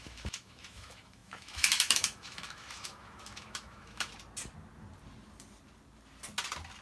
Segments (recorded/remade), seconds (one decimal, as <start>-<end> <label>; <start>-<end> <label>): 0.0-4.1 remade; 4.1-6.8 recorded